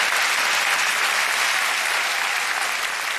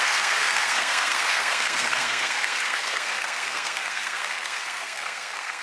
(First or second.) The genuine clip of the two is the first